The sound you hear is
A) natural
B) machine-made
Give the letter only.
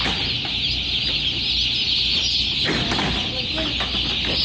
A